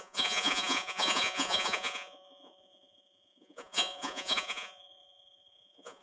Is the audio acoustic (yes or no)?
no